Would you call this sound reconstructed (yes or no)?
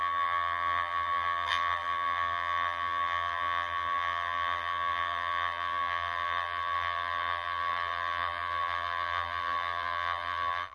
yes